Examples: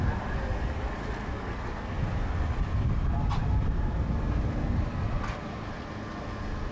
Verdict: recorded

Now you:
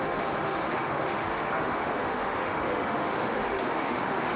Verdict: remade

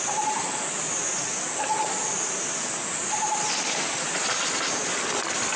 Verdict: recorded